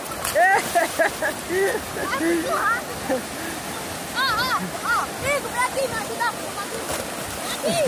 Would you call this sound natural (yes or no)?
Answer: yes